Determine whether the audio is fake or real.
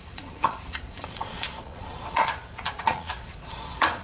fake